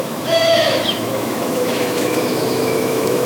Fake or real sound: fake